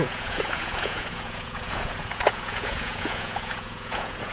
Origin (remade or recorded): remade